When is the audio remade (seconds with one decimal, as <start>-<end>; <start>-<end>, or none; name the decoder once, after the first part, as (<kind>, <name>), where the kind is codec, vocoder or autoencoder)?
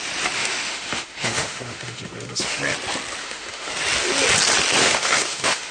0.4-2.6 (autoencoder, DAC-VAE); 3.2-3.7; 4.8-5.7